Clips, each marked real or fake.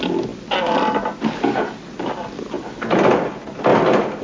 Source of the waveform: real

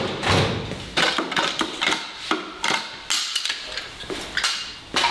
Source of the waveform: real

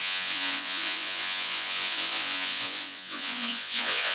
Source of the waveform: fake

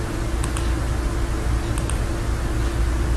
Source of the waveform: real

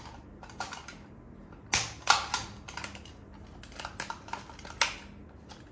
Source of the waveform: real